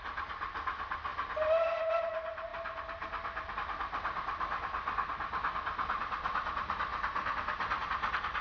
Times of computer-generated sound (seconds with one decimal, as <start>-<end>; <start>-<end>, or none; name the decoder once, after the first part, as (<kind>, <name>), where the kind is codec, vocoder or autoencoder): none